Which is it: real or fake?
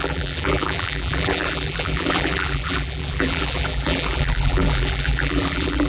fake